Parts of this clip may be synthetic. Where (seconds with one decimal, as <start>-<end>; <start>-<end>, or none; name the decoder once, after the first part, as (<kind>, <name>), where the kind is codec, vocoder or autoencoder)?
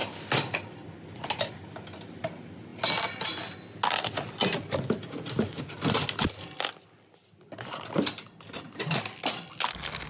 none